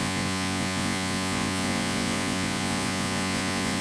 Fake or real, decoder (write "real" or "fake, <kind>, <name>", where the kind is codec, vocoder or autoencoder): fake, vocoder, Vocos